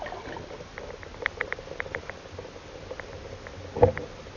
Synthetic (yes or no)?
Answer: no